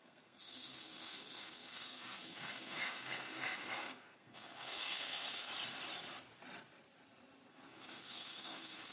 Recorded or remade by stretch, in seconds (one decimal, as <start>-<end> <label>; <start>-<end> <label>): 0.0-5.5 remade; 5.5-7.5 recorded; 7.5-8.9 remade